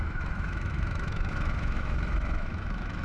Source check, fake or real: fake